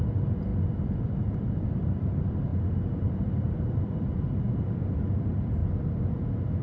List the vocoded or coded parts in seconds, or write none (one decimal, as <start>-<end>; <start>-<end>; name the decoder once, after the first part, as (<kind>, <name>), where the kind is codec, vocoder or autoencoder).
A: 0.0-0.5 (vocoder, BigVGAN v2); 1.0-5.6